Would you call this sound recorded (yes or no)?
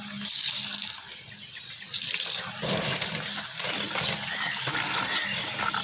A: no